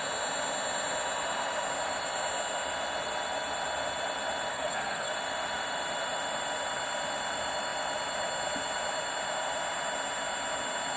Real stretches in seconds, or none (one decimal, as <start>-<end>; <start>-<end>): 0.0-4.5; 5.1-11.0